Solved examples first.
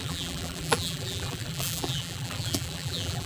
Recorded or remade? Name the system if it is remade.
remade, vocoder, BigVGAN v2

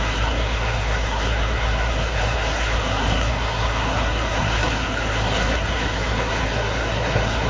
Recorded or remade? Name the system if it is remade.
remade, codec, SNAC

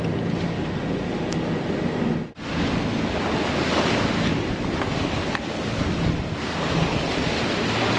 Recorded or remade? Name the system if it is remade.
recorded